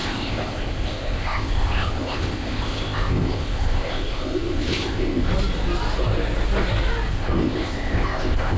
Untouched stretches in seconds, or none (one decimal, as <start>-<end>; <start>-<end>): 5.3-7.1